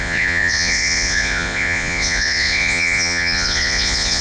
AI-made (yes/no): yes